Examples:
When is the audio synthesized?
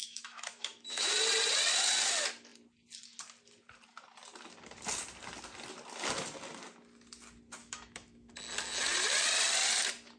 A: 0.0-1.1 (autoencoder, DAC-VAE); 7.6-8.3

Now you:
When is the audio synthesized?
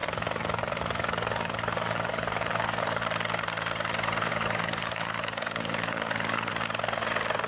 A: 0.0-3.0 (codec, DAC); 4.3-6.5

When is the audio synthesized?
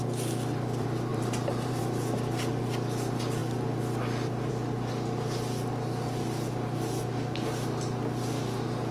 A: 1.1-1.8 (vocoder, BigVGAN v2)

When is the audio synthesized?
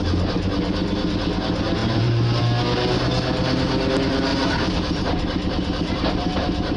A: 1.8-2.4 (vocoder, BigVGAN v2); 4.3-6.8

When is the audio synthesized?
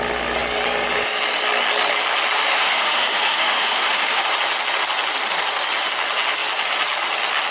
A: 2.4-4.2 (autoencoder, DAC-VAE)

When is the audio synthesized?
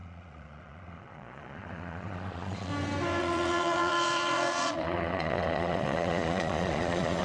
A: 0.0-2.7 (vocoder, Vocos); 3.2-7.2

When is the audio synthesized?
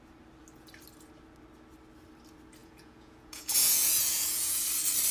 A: 2.6-4.6 (vocoder, Vocos)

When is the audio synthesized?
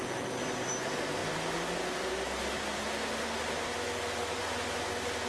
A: none